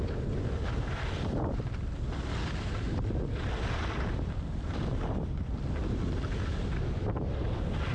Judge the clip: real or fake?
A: real